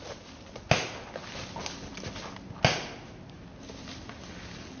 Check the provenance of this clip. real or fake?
real